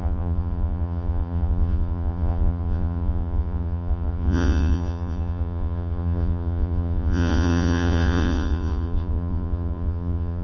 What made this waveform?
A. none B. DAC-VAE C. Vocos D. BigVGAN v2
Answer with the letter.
C